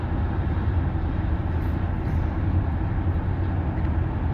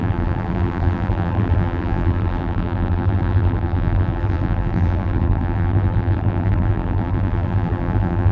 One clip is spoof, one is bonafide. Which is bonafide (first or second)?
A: first